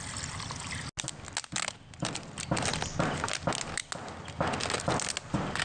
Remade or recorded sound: recorded